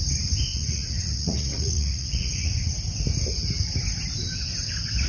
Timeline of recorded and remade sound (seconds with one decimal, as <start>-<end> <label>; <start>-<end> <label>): 0.0-0.5 recorded; 0.5-2.8 remade; 2.8-5.1 recorded